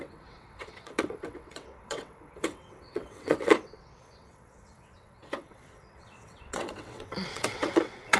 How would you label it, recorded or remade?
remade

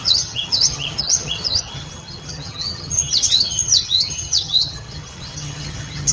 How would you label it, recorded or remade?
remade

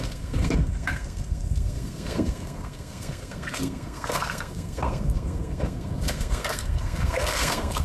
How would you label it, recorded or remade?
remade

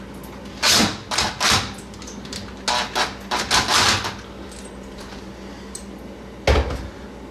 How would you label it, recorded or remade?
recorded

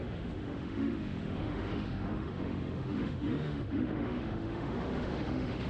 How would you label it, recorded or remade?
remade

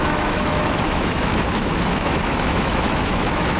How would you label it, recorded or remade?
remade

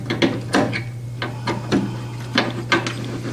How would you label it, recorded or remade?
recorded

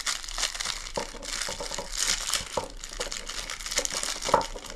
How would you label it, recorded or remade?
recorded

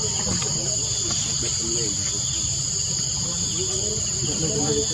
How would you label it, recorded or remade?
recorded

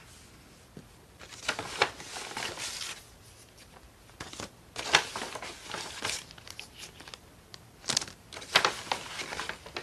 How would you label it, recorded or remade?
recorded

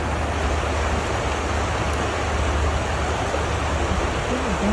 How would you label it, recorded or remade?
recorded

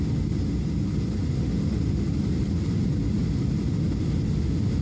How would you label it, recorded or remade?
recorded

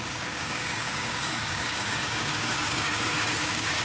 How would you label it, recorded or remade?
remade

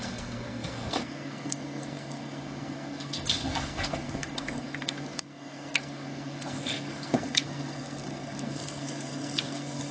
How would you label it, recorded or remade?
remade